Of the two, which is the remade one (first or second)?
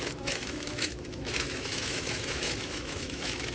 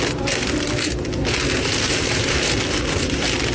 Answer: first